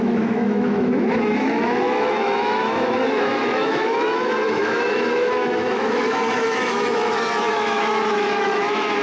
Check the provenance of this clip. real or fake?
fake